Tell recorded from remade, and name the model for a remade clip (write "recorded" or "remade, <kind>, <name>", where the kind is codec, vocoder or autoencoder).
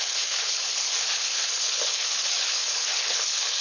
remade, codec, HILCodec